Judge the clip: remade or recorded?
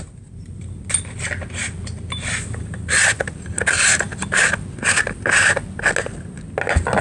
recorded